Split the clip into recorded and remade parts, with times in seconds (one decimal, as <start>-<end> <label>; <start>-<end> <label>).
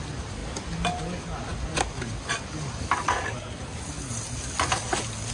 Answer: 0.0-5.3 recorded